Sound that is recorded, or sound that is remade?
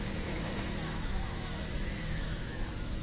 remade